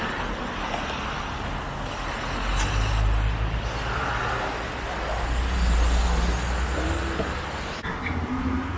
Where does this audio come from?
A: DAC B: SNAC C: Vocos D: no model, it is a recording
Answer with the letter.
D